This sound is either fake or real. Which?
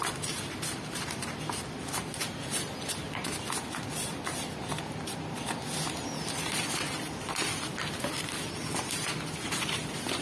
real